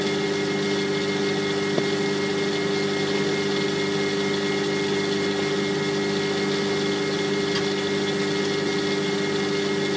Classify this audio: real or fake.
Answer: real